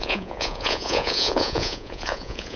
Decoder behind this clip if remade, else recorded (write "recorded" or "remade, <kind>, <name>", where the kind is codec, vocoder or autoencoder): remade, vocoder, Vocos